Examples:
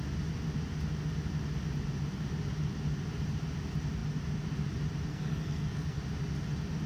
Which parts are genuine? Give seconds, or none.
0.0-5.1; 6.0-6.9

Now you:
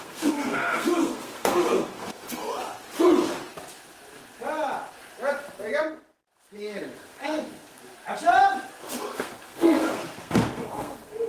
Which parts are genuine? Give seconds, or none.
2.4-6.4; 7.8-8.8